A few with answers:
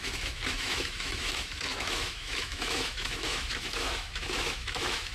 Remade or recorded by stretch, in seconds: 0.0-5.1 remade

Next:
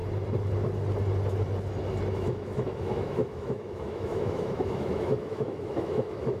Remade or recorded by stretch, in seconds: 0.0-2.1 recorded; 2.1-6.4 remade

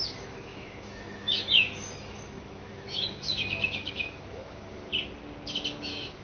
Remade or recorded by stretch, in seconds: 0.0-4.9 remade; 4.9-5.8 recorded; 5.8-6.2 remade

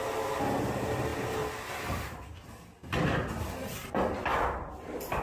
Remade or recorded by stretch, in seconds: 0.0-5.2 recorded

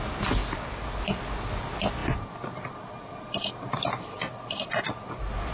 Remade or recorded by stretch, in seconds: 0.0-5.5 recorded

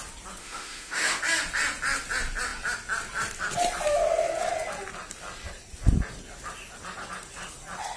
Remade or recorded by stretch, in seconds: 0.0-0.4 recorded; 0.4-1.2 remade; 1.2-8.0 recorded

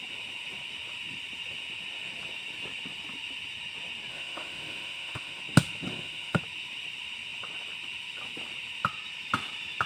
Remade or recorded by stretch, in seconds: 0.0-4.1 recorded; 4.1-5.4 remade; 5.4-5.9 recorded; 5.9-6.4 remade; 6.4-9.9 recorded